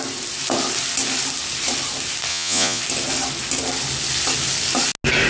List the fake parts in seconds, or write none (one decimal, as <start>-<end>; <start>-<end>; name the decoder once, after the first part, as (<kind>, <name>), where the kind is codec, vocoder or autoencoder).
2.3-2.8 (vocoder, Vocos)